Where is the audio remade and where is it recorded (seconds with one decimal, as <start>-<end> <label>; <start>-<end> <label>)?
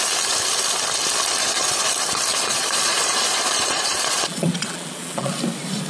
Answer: 0.0-1.4 recorded; 1.4-1.9 remade; 1.9-2.3 recorded; 2.3-5.3 remade; 5.3-5.9 recorded